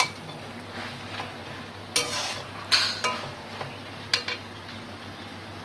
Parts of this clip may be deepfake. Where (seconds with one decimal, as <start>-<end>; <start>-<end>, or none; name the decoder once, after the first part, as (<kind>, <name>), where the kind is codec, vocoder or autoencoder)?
none

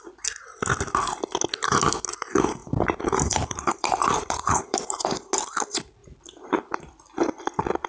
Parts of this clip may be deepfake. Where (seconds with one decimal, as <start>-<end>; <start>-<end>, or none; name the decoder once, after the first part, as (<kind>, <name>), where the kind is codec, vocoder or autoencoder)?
2.6-5.3 (vocoder, BigVGAN v2)

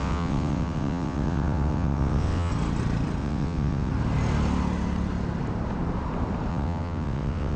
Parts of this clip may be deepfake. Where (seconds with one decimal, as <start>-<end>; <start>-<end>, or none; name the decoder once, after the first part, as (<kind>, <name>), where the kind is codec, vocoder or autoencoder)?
0.0-2.5 (vocoder, WaveNeXt); 3.2-3.9; 6.5-7.6

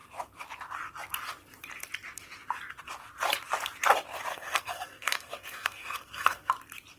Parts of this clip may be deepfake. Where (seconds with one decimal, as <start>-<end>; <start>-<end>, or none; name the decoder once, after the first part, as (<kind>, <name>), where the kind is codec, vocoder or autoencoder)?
4.3-6.5 (codec, SNAC)

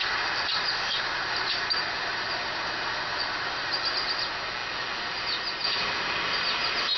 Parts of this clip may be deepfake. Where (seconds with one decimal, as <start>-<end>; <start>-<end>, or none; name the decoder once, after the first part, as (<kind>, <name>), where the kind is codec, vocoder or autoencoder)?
0.0-3.7 (vocoder, BigVGAN v2)

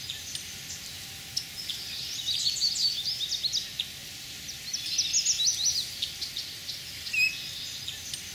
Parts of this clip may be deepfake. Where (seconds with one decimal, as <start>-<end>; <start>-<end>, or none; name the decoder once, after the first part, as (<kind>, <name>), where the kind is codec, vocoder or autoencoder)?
4.0-5.1 (vocoder, BigVGAN v2)